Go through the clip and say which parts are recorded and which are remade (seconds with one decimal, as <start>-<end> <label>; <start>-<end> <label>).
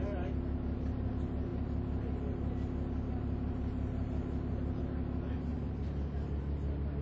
0.0-7.0 recorded